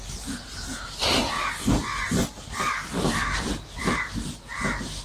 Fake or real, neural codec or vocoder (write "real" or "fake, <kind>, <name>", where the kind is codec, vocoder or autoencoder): real